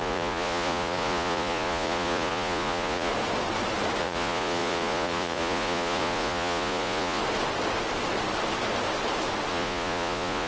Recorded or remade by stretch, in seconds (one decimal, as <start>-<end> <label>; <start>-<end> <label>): 0.0-3.1 remade; 3.1-4.0 recorded; 4.0-7.2 remade; 7.2-9.5 recorded; 9.5-10.5 remade